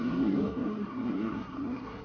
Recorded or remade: remade